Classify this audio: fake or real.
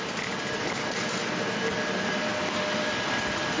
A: real